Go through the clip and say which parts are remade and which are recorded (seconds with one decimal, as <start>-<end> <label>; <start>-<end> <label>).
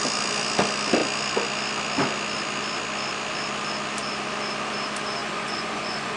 0.0-5.2 recorded; 5.2-6.2 remade